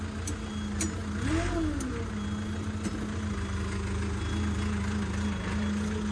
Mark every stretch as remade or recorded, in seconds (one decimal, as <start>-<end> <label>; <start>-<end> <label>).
0.0-6.1 recorded